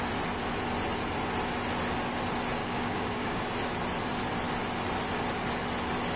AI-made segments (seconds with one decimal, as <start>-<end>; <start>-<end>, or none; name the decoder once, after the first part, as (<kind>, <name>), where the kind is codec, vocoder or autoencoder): 2.6-3.4 (codec, DAC)